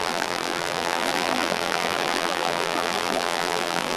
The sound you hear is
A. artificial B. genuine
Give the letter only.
A